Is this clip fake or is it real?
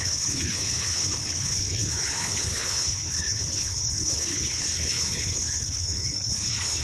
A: fake